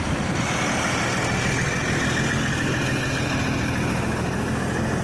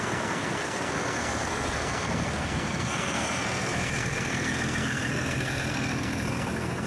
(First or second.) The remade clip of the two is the second